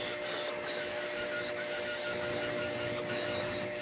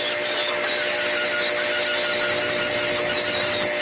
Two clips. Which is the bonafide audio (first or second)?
second